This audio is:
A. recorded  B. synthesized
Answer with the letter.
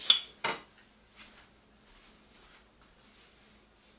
A